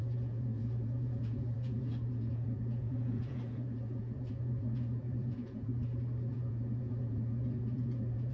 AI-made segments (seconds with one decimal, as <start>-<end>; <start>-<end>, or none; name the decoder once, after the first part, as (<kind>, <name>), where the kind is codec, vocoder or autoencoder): 0.0-5.7 (vocoder, Vocos); 6.3-8.3